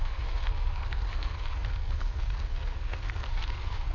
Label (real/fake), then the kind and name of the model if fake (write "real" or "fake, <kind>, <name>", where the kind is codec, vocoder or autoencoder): fake, codec, SNAC